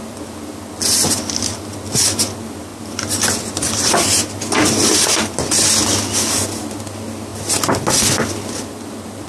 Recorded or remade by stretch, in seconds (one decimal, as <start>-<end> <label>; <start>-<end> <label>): 0.0-9.3 recorded